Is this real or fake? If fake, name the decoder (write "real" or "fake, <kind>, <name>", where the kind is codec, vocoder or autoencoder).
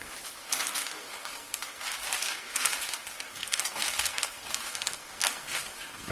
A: fake, codec, SNAC